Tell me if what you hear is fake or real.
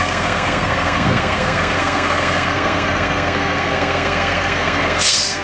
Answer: fake